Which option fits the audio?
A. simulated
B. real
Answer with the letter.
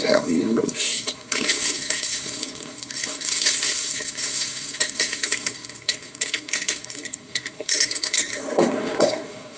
A